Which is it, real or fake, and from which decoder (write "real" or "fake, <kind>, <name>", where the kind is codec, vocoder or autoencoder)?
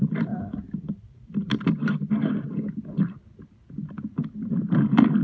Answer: real